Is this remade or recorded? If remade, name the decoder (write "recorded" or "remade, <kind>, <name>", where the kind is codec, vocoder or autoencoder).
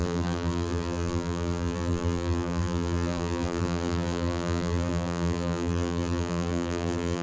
remade, vocoder, BigVGAN v2